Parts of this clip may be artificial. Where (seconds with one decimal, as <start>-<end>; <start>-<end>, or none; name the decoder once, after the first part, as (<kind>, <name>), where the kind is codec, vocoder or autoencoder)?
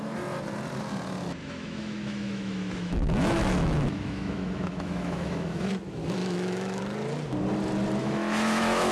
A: 1.4-5.7 (autoencoder, DAC-VAE); 6.2-6.8; 8.0-8.9